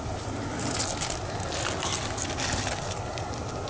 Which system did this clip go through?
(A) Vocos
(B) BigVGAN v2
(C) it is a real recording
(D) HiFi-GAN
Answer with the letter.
C